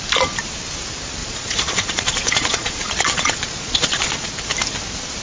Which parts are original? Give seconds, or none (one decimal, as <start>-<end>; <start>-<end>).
0.0-1.2; 4.3-5.2